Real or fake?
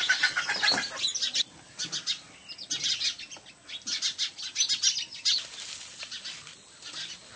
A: real